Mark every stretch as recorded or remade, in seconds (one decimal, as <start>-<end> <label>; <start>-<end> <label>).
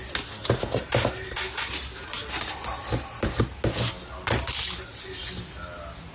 0.0-6.1 recorded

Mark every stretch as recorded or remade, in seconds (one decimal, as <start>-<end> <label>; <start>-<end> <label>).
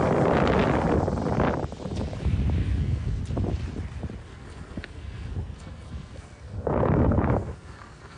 0.0-2.6 recorded; 2.6-3.2 remade; 3.2-4.2 recorded; 4.2-8.2 remade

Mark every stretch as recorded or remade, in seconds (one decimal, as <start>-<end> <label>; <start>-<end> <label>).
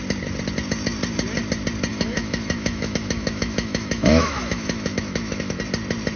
0.0-1.9 recorded; 1.9-5.6 remade; 5.6-6.2 recorded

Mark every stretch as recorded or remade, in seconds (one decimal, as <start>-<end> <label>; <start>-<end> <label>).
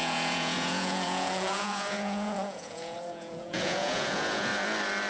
0.0-4.5 remade; 4.5-5.1 recorded